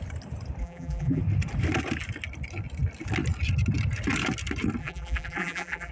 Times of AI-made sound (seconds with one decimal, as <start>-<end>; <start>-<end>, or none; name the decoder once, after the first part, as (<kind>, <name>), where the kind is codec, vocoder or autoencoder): 0.6-1.2 (vocoder, BigVGAN v2); 4.8-5.9